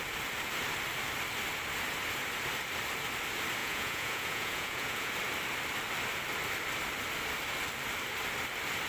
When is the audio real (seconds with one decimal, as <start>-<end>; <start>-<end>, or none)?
0.0-3.6; 5.1-8.9